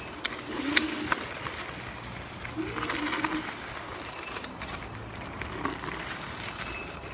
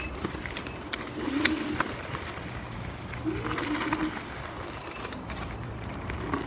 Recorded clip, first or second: first